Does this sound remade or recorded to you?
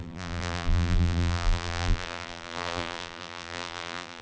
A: remade